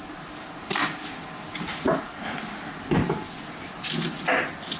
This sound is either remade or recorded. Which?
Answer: recorded